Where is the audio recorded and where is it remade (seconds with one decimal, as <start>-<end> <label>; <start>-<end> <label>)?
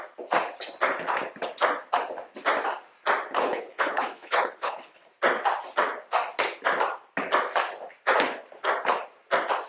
0.0-3.4 recorded; 3.4-5.1 remade; 5.1-9.7 recorded